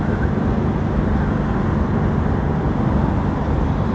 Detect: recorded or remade recorded